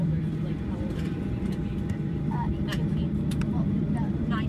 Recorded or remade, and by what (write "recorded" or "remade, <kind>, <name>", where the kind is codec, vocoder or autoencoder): remade, vocoder, BigVGAN v2